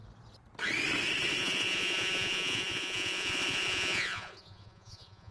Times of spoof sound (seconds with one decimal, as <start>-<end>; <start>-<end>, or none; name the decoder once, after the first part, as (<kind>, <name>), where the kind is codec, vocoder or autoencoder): 1.4-5.3 (vocoder, Vocos)